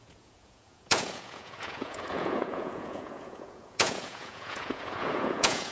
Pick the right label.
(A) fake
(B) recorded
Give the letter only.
A